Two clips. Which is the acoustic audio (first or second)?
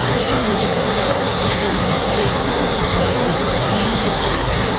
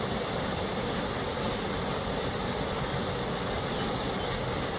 second